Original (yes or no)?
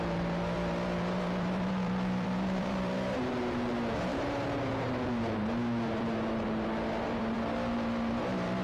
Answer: no